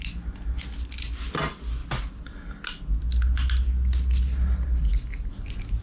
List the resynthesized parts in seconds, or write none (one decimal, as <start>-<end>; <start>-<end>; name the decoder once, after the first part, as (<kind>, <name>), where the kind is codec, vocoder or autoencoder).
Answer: none